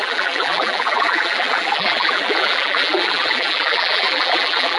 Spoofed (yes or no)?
yes